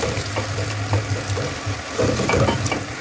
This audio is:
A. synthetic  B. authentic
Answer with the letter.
B